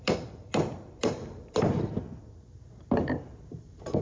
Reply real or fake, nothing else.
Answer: fake